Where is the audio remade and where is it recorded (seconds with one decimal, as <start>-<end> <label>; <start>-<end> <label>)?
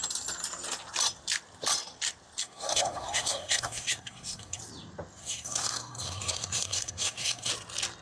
0.0-2.4 recorded; 2.4-4.6 remade; 4.6-5.2 recorded; 5.2-7.5 remade; 7.5-8.0 recorded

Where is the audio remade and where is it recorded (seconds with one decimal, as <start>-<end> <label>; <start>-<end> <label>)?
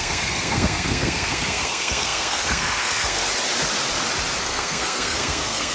0.0-3.2 remade; 3.2-4.4 recorded; 4.4-5.7 remade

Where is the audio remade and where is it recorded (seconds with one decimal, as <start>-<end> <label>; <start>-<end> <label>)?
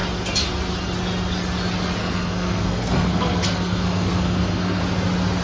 0.0-2.0 recorded; 2.0-4.8 remade; 4.8-5.4 recorded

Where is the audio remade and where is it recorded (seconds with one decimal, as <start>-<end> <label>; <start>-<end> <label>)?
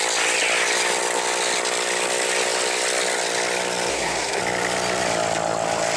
0.0-3.9 recorded; 3.9-4.4 remade; 4.4-6.0 recorded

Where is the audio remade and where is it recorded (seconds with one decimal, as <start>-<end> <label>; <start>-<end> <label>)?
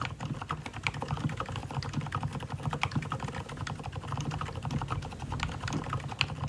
0.0-6.5 recorded